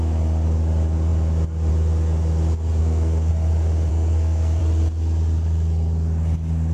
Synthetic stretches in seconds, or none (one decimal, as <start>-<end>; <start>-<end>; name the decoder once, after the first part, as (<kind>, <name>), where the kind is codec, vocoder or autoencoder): 2.8-3.3 (codec, SNAC); 3.9-4.6